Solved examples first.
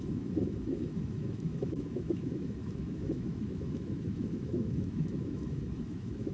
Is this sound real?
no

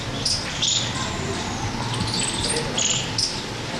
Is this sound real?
yes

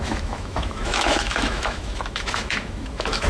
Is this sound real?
no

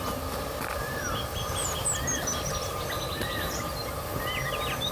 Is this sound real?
yes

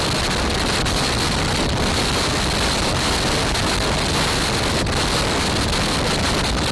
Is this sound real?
yes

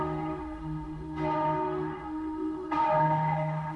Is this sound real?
no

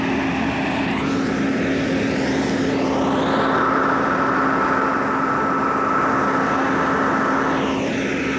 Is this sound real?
yes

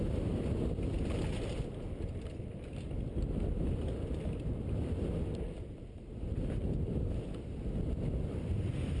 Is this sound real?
yes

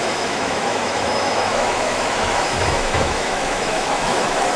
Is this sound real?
no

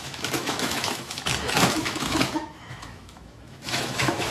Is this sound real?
no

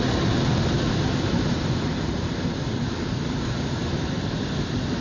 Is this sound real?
yes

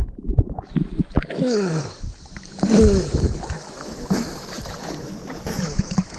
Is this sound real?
no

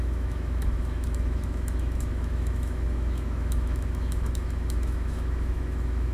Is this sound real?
no